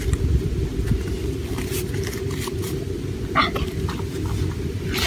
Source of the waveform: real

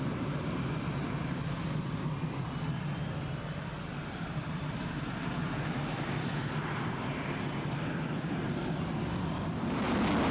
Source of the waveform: real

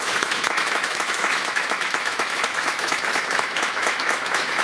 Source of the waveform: fake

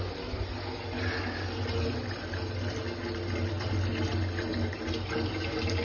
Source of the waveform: real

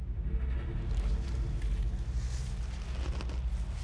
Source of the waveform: real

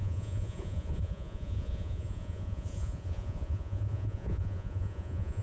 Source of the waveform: fake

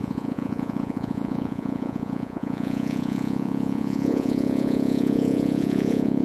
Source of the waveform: fake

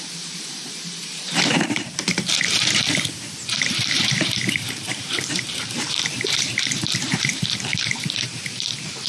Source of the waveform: fake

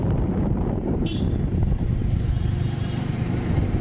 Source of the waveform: fake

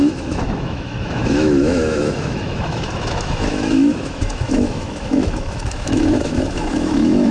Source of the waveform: fake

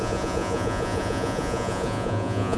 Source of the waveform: fake